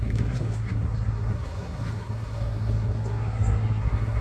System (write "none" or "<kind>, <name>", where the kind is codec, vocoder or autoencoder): codec, SNAC